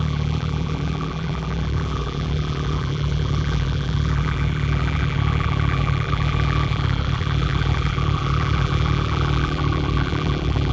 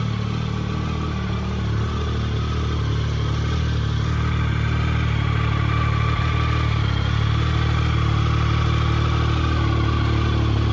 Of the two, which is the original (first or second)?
second